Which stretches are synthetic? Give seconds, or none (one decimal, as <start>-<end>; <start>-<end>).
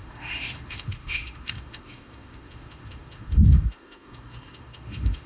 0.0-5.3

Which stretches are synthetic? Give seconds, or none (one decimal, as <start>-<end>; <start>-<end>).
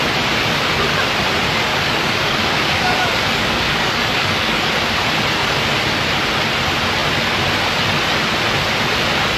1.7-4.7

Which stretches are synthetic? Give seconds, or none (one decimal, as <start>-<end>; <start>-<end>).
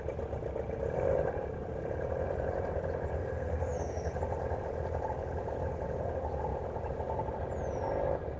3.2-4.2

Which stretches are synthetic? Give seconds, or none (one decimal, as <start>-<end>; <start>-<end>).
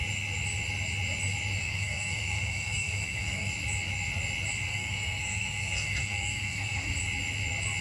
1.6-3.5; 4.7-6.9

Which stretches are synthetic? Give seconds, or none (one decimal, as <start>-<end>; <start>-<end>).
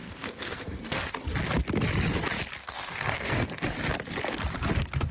0.0-1.1; 2.6-3.5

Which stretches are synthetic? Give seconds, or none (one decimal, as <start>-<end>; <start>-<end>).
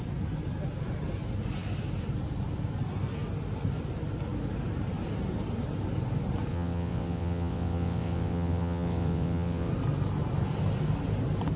6.5-9.7